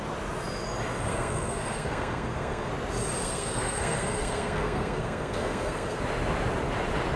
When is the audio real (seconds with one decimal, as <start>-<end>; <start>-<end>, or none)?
0.0-1.1; 2.7-3.2; 6.0-7.2